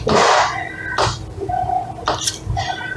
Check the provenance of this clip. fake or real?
real